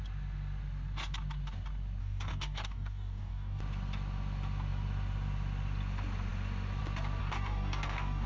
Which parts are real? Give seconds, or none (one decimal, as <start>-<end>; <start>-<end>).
0.0-2.0; 3.6-7.2